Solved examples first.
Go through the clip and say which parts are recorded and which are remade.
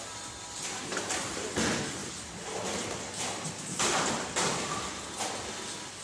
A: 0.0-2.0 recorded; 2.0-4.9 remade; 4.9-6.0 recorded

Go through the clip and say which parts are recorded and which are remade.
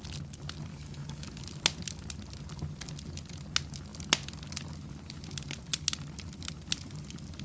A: 0.0-0.7 recorded; 0.7-1.4 remade; 1.4-7.4 recorded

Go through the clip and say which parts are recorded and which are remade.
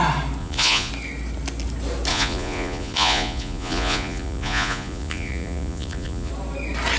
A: 0.0-0.4 recorded; 0.4-0.9 remade; 0.9-2.1 recorded; 2.1-6.3 remade; 6.3-7.0 recorded